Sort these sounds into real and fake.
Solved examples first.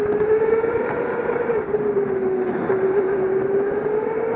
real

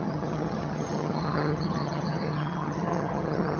fake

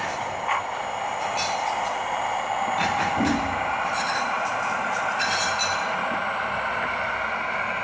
real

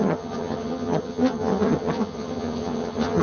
fake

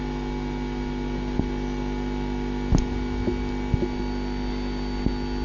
real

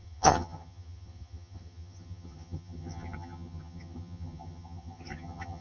fake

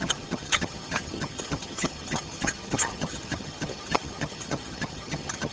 fake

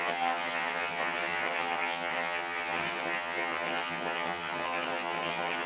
fake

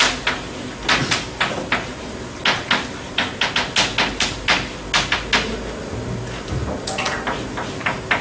real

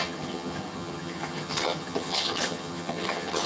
fake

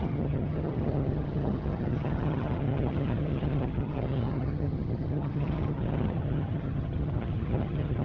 fake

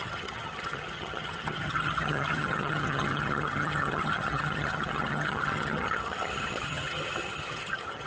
fake